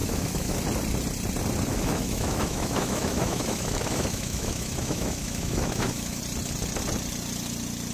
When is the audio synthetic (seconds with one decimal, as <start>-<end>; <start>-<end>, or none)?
0.0-0.6; 1.7-6.2

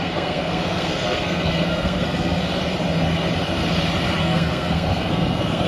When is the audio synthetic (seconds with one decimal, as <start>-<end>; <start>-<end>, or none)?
0.0-2.4; 4.2-5.7

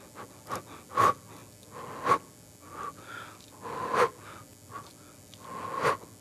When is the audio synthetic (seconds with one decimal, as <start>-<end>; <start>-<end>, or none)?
none

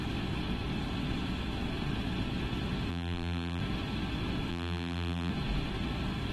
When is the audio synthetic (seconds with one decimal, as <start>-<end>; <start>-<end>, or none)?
2.9-3.6; 4.5-5.3

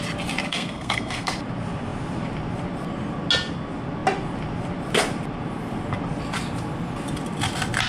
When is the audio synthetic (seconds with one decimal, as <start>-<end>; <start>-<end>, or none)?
0.5-1.3

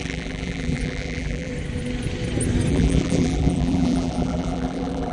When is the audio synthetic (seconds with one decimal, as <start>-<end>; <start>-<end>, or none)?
0.0-1.5; 2.7-5.1

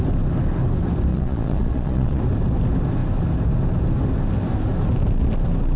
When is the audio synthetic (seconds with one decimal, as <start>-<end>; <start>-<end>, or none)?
1.1-2.2